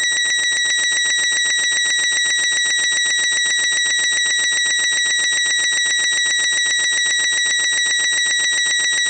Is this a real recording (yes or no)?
yes